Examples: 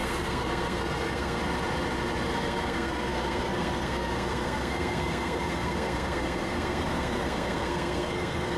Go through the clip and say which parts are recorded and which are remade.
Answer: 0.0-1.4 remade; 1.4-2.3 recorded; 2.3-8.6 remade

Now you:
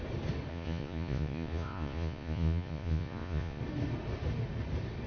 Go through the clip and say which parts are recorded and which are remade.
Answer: 0.0-0.5 recorded; 0.5-3.6 remade; 3.6-5.1 recorded

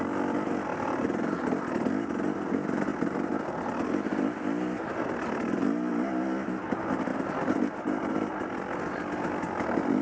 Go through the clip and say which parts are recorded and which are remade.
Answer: 0.0-0.7 recorded; 0.7-1.4 remade; 1.4-2.9 recorded; 2.9-3.7 remade; 3.7-7.1 recorded; 7.1-8.1 remade; 8.1-10.0 recorded

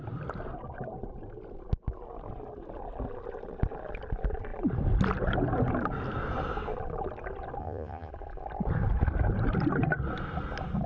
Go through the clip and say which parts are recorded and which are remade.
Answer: 0.0-7.6 recorded; 7.6-8.1 remade; 8.1-10.9 recorded

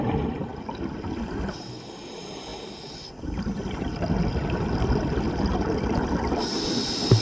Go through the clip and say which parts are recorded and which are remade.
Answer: 0.0-7.2 recorded

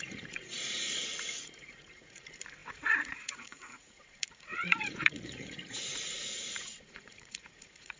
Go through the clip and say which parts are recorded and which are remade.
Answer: 0.0-8.0 remade

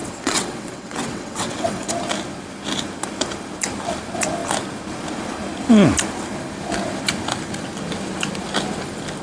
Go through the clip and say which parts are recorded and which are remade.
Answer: 0.0-1.9 remade; 1.9-9.2 recorded

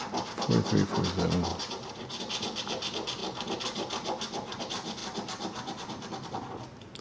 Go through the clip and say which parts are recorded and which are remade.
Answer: 0.0-5.0 recorded; 5.0-6.5 remade; 6.5-7.0 recorded